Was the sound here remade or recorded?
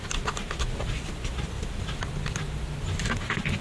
recorded